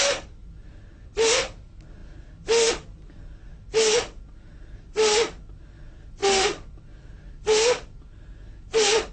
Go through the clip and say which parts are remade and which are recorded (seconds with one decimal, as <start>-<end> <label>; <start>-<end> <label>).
0.0-9.1 recorded

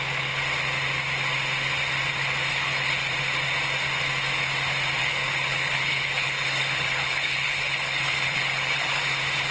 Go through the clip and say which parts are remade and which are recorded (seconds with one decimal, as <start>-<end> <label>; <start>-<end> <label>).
0.0-2.5 recorded; 2.5-3.1 remade; 3.1-5.0 recorded; 5.0-9.0 remade; 9.0-9.5 recorded

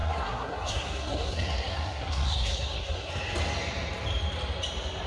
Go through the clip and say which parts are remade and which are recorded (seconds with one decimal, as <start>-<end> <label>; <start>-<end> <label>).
0.0-3.1 remade; 3.1-5.1 recorded

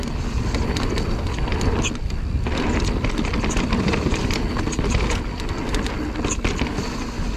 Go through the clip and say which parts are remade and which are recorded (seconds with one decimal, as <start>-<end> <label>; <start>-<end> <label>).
0.0-7.4 recorded

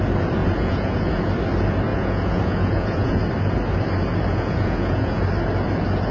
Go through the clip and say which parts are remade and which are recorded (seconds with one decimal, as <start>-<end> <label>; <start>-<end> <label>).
0.0-0.4 recorded; 0.4-1.3 remade; 1.3-1.9 recorded; 1.9-3.2 remade; 3.2-4.3 recorded; 4.3-5.2 remade; 5.2-6.1 recorded

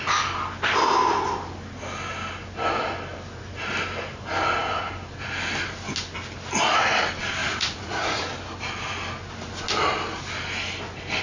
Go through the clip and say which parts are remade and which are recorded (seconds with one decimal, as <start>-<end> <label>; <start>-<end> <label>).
0.0-7.4 recorded; 7.4-8.2 remade; 8.2-11.2 recorded

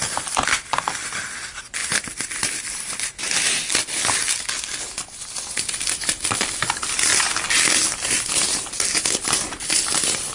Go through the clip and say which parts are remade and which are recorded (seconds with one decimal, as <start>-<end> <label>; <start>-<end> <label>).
0.0-7.1 remade; 7.1-8.3 recorded; 8.3-10.3 remade